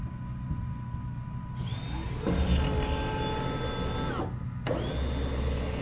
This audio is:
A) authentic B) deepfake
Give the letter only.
A